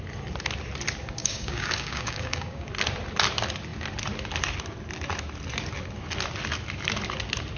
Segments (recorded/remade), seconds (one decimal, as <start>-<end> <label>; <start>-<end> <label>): 0.0-1.2 recorded; 1.2-2.7 remade; 2.7-7.6 recorded